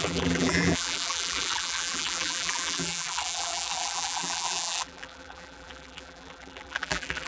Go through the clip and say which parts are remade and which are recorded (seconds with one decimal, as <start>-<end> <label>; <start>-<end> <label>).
0.0-7.3 remade